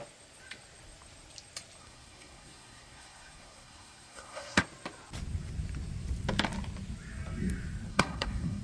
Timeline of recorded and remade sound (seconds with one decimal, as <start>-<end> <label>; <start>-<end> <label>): 0.0-1.8 recorded; 1.8-4.6 remade; 4.6-7.9 recorded; 7.9-8.6 remade